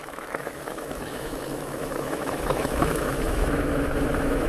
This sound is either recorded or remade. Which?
remade